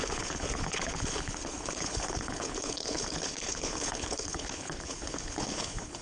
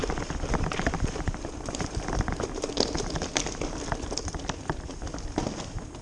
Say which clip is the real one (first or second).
second